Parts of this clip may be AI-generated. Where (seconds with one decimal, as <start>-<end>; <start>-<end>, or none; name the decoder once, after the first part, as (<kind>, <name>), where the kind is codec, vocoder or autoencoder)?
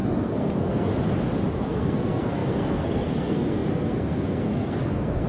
0.0-0.9 (codec, SNAC); 1.5-5.3